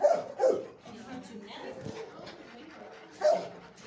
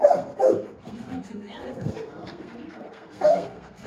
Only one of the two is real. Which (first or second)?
first